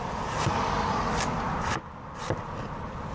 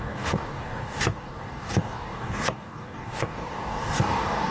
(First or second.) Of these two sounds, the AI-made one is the second